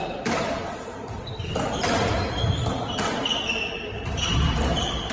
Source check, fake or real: real